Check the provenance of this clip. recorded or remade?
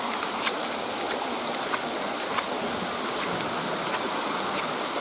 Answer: recorded